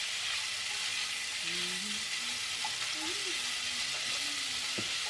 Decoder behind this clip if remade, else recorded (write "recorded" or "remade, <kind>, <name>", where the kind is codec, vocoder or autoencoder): recorded